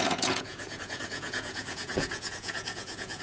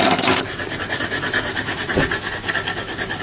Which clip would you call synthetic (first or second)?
first